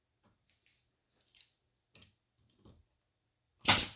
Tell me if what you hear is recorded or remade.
recorded